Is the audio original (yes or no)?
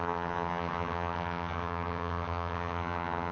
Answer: no